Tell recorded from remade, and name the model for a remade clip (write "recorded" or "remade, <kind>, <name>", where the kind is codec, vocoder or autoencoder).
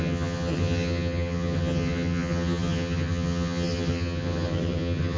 remade, vocoder, HiFi-GAN